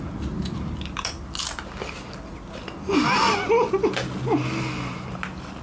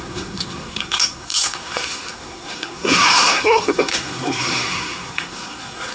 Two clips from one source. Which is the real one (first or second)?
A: first